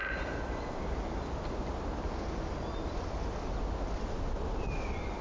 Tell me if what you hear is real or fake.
real